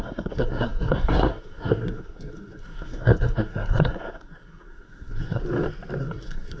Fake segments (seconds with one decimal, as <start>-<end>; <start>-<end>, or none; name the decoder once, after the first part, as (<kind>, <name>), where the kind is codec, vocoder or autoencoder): 0.0-5.4 (codec, SNAC); 6.0-6.6